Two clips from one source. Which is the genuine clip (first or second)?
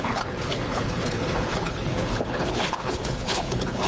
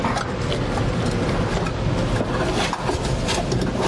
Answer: second